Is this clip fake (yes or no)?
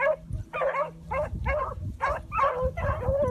no